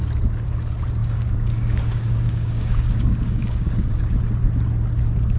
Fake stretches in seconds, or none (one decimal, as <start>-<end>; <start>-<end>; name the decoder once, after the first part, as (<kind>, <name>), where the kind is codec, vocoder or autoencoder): 1.0-4.2 (codec, DAC)